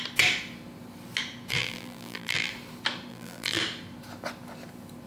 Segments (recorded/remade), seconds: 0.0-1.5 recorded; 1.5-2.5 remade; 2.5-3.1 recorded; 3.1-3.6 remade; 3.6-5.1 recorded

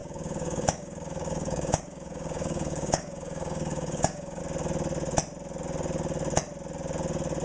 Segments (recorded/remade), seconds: 0.0-4.4 remade; 4.4-7.4 recorded

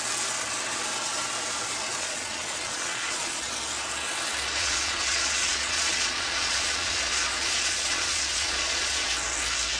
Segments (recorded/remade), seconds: 0.0-1.9 recorded; 1.9-3.5 remade; 3.5-4.6 recorded; 4.6-9.1 remade; 9.1-9.8 recorded

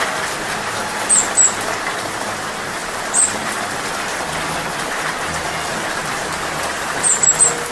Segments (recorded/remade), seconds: 0.0-2.8 recorded; 2.8-3.9 remade; 3.9-5.7 recorded; 5.7-7.3 remade; 7.3-7.7 recorded

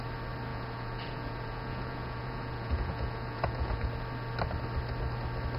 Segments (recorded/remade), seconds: 0.0-0.5 recorded; 0.5-3.9 remade; 3.9-5.6 recorded